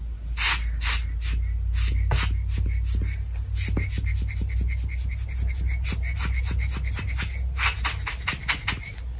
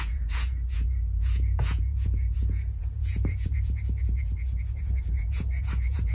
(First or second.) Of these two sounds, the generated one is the second